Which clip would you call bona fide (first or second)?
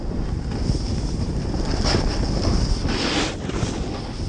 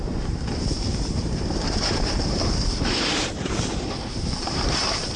first